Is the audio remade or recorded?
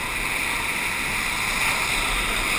recorded